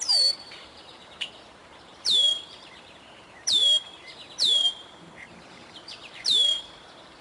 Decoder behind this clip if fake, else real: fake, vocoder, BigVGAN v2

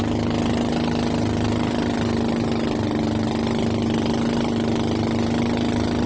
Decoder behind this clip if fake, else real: real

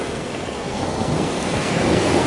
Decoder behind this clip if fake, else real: fake, codec, SNAC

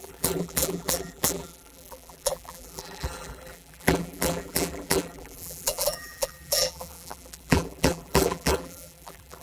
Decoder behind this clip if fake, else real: fake, vocoder, BigVGAN v2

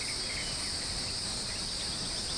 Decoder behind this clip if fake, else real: real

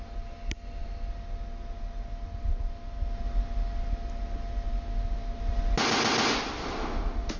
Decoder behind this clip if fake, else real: real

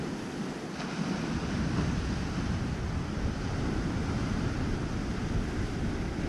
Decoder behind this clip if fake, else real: real